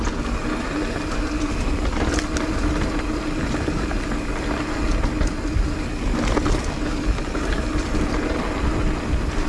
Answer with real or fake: real